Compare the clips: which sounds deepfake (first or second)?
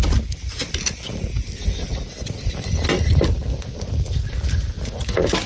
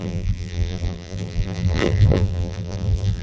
second